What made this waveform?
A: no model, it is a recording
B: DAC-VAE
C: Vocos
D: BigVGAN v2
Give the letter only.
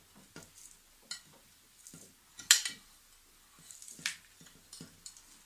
A